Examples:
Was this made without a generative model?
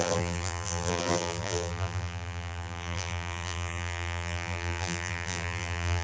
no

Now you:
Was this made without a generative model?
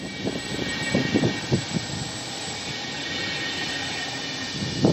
yes